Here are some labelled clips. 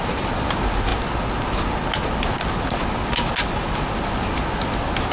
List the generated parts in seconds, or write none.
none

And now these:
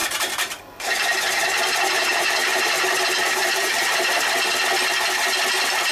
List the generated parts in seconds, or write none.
0.0-3.0 (vocoder, BigVGAN v2); 3.4-4.2

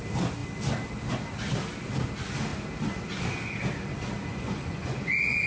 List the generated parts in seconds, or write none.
4.3-5.5 (vocoder, Vocos)

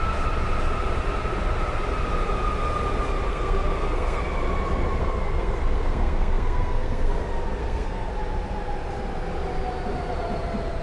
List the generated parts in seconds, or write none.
3.3-4.2 (codec, SNAC); 5.0-7.1; 7.6-8.1

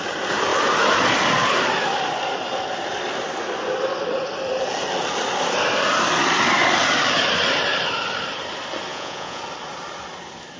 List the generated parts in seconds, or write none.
8.9-9.4 (vocoder, Vocos)

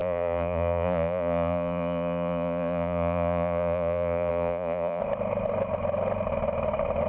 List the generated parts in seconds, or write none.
0.0-5.0 (vocoder, Vocos)